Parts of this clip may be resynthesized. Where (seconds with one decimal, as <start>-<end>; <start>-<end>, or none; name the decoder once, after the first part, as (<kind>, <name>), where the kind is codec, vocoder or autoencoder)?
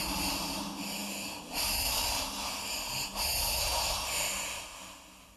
none